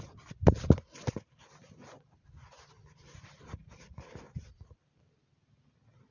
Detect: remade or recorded remade